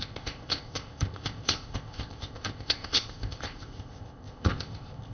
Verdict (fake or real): fake